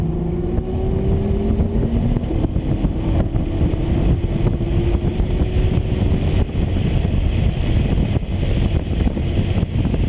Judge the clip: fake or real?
real